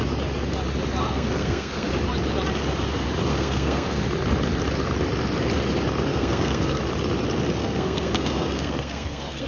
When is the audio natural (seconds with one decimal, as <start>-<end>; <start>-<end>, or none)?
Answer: 0.0-1.0; 1.9-3.3; 4.0-6.1; 6.8-7.6